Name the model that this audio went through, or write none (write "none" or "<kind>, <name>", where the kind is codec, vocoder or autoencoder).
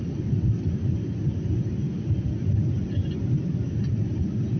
none